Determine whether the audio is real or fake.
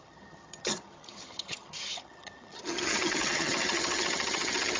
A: fake